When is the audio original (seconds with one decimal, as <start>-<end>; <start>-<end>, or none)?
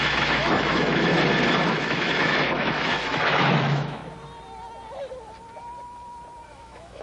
1.1-1.7; 4.0-6.5